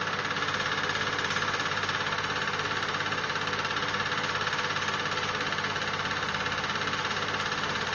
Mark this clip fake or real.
real